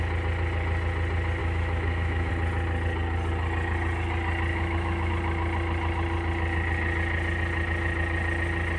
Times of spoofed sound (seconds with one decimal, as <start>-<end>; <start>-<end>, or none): 1.4-2.3; 4.5-5.1